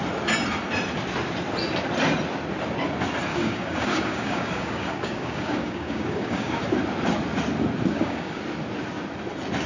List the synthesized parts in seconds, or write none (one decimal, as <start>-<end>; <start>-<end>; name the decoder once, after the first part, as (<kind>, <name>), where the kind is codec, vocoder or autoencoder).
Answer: 3.3-6.6 (codec, DAC); 7.9-8.4